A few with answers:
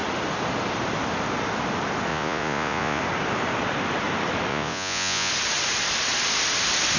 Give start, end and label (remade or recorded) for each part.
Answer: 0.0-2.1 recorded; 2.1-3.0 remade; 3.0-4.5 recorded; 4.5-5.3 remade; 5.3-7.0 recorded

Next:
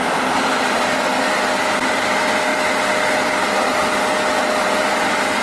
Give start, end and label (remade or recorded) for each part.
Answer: 0.0-5.4 recorded

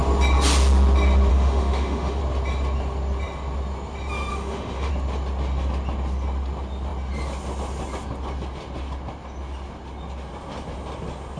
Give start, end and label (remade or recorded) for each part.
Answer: 0.0-1.3 recorded; 1.3-2.2 remade; 2.2-4.3 recorded; 4.3-4.9 remade; 4.9-11.4 recorded